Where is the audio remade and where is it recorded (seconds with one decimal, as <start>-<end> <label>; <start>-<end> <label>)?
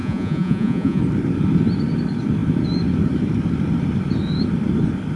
0.0-1.0 remade; 1.0-5.2 recorded